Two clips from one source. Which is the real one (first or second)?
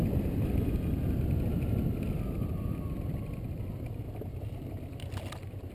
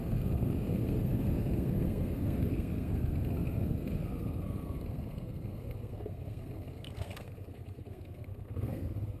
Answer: first